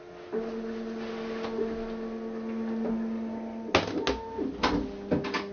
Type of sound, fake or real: real